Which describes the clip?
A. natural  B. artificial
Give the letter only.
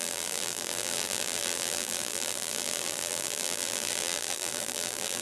B